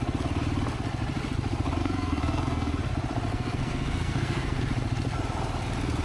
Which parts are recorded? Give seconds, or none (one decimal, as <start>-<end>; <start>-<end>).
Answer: 0.0-1.8; 2.7-3.3; 4.6-6.0